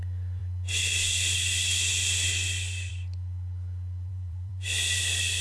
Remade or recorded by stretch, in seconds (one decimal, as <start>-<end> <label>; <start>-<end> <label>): 0.0-4.1 recorded; 4.1-5.0 remade; 5.0-5.4 recorded